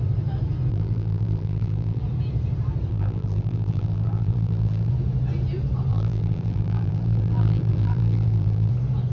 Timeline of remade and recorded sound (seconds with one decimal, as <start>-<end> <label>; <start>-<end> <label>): 0.0-0.7 recorded; 0.7-2.0 remade; 2.0-2.9 recorded; 2.9-4.9 remade; 4.9-5.9 recorded; 5.9-8.7 remade; 8.7-9.1 recorded